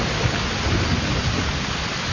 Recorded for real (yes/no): yes